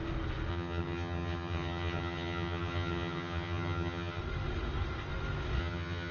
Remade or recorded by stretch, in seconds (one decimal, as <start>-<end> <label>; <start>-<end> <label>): 0.0-0.5 recorded; 0.5-4.2 remade; 4.2-5.6 recorded; 5.6-6.1 remade